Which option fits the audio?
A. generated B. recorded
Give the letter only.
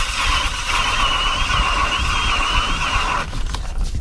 B